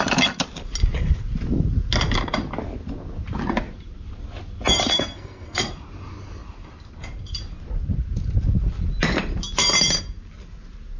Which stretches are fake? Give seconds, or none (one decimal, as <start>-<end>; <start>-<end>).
4.9-5.7